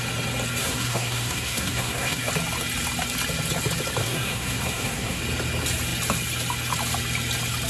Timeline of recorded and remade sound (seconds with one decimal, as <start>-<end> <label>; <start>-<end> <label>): 0.0-0.6 recorded; 0.6-2.3 remade; 2.3-4.0 recorded; 4.0-5.2 remade; 5.2-7.7 recorded